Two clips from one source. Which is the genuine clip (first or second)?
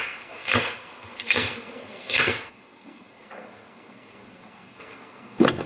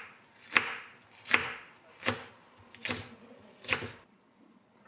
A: second